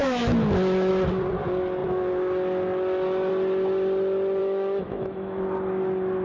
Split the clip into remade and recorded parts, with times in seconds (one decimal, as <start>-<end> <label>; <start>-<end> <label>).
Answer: 0.0-0.9 remade; 0.9-4.4 recorded; 4.4-5.4 remade; 5.4-6.2 recorded